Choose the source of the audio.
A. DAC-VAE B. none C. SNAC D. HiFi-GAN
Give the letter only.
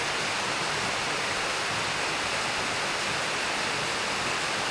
B